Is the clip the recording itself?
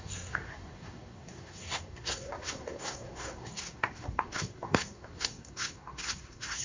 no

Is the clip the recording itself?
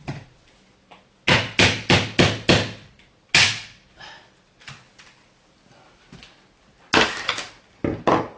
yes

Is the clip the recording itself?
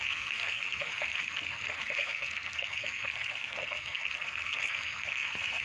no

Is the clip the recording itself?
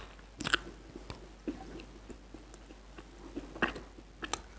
yes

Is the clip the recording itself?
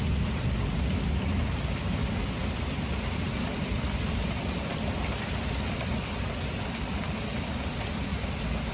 yes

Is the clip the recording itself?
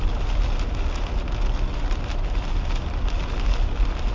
yes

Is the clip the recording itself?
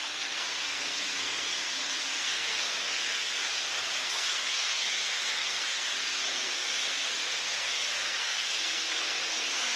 no